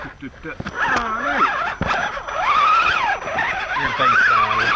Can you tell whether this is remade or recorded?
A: recorded